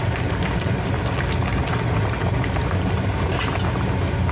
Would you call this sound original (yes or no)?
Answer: yes